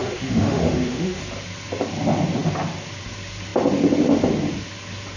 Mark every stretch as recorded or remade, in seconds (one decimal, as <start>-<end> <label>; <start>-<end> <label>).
0.0-1.2 remade; 1.2-5.2 recorded